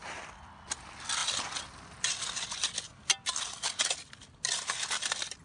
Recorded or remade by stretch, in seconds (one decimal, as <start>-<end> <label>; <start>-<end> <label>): 0.0-5.4 recorded